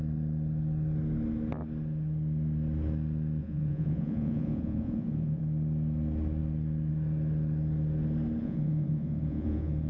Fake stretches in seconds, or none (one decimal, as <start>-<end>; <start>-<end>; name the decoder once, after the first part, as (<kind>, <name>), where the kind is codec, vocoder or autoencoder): 3.4-5.4 (vocoder, Vocos); 8.4-9.9